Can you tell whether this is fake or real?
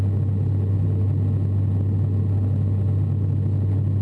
real